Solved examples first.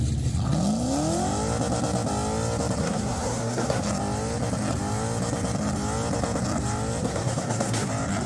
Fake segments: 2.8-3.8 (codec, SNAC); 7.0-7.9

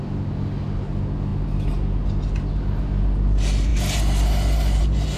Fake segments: none

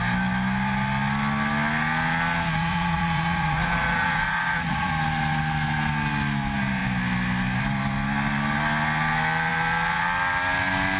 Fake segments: 2.6-4.9 (vocoder, Vocos)